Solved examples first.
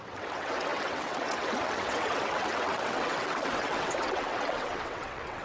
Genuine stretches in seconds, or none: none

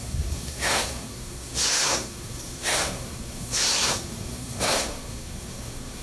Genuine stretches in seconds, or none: none

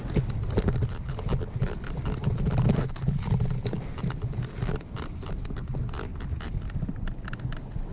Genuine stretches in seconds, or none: 0.0-7.9

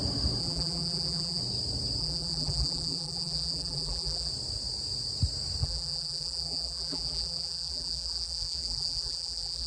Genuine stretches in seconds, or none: 0.0-0.4; 1.4-2.0; 4.3-5.6

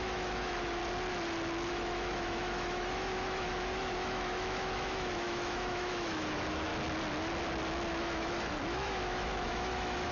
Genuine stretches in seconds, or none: 0.8-1.7; 6.7-8.0